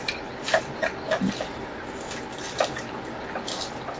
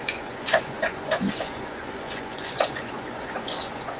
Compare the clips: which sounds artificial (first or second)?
second